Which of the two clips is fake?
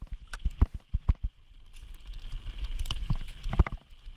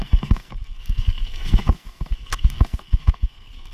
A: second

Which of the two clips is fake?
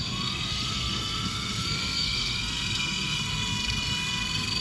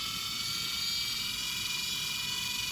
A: first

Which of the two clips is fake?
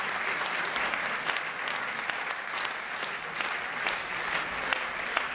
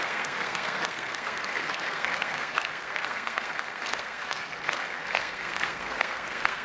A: second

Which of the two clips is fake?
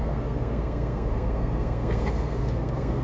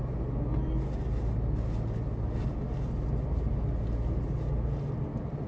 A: first